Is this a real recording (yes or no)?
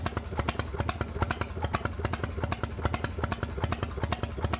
yes